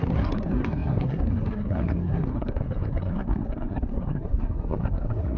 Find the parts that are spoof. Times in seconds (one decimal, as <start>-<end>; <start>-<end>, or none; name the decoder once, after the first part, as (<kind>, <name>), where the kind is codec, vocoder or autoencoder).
0.0-5.4 (codec, SNAC)